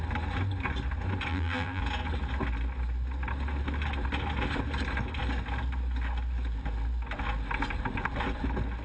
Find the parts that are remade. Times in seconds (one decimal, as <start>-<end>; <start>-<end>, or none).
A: 1.3-1.8